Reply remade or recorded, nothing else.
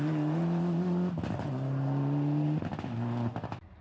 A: recorded